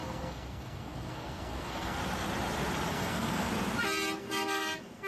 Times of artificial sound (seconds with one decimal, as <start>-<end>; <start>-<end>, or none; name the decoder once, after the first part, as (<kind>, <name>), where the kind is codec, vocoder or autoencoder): 0.0-2.0 (codec, SNAC); 2.9-3.5; 4.2-5.1